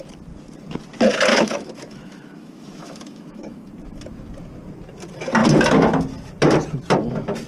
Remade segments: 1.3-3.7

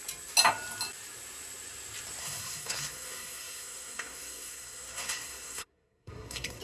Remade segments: 2.2-6.6

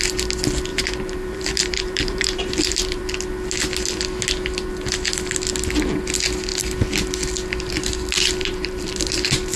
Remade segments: 0.7-3.0; 8.4-9.2

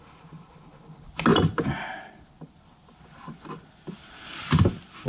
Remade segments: none

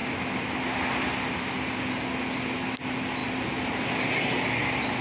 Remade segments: none